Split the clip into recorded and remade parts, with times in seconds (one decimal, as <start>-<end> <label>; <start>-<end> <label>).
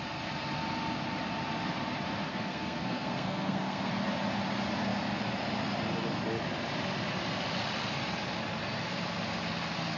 0.0-2.3 recorded; 2.3-3.9 remade; 3.9-10.0 recorded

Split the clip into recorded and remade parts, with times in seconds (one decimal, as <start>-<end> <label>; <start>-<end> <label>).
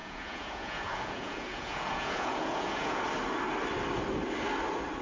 0.0-3.0 remade; 3.0-5.0 recorded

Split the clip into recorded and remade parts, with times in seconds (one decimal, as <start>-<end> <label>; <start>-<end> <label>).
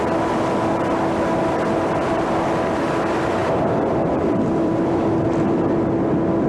0.0-3.4 recorded; 3.4-5.6 remade; 5.6-6.5 recorded